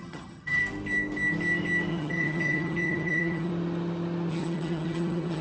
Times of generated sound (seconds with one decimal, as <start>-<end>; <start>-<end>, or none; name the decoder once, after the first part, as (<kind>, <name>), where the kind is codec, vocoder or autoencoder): 0.0-0.6 (vocoder, HiFi-GAN); 1.9-3.5; 4.3-5.4